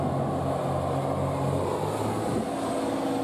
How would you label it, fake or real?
real